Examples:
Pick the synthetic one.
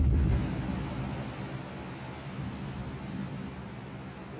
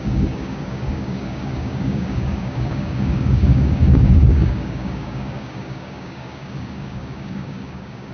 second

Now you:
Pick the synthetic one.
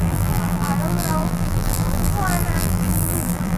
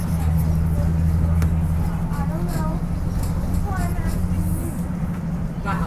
first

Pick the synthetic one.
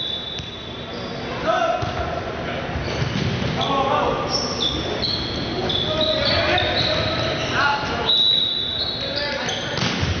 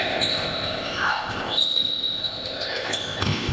second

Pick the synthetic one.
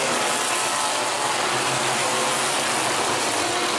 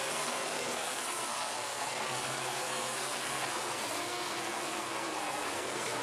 second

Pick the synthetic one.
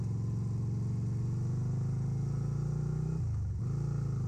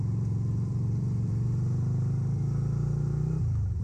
second